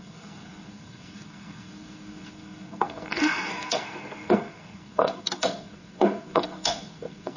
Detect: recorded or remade remade